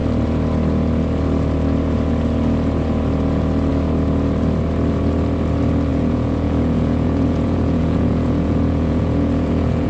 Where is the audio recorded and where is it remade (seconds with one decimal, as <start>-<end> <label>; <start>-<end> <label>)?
0.0-5.9 recorded; 5.9-9.9 remade